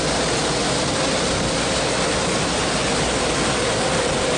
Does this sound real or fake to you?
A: real